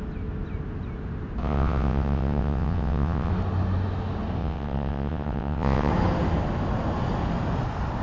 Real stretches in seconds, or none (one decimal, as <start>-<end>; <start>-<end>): 0.0-1.4; 3.3-4.4; 5.9-8.0